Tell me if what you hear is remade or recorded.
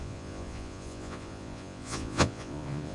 remade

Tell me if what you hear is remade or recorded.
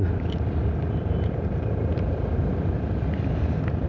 recorded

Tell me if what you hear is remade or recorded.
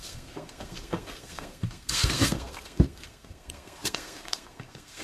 remade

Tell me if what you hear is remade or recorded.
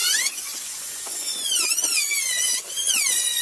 remade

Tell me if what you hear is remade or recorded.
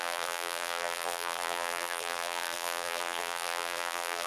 remade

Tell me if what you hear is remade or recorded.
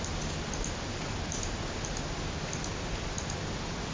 recorded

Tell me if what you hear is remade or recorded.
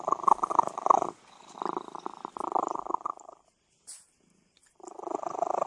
recorded